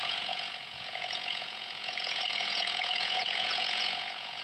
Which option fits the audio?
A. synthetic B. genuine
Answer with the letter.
A